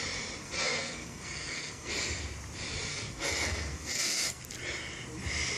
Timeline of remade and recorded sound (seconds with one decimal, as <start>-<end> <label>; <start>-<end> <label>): 0.0-0.4 recorded; 0.4-1.9 remade; 1.9-2.9 recorded; 2.9-4.4 remade; 4.4-5.6 recorded